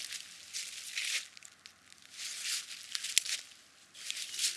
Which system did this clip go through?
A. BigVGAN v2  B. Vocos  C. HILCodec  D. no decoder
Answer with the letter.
D